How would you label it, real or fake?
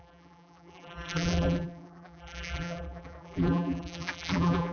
fake